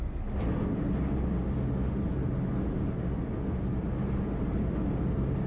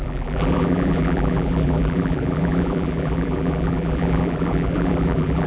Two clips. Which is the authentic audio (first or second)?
first